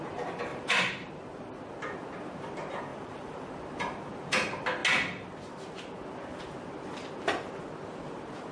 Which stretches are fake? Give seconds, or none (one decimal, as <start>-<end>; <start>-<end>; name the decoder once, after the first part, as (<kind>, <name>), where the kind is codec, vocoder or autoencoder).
0.5-1.1 (vocoder, BigVGAN v2); 2.9-3.5